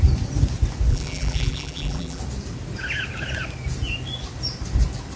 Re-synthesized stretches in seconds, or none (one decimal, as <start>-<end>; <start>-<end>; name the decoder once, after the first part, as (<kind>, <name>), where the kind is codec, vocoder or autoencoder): 0.9-2.2 (vocoder, BigVGAN v2)